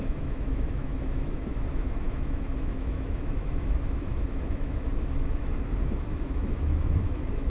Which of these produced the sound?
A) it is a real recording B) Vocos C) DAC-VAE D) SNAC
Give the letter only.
C